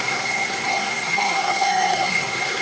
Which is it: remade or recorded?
remade